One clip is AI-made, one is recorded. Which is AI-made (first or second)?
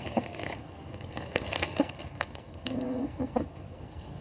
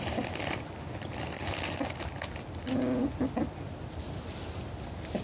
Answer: first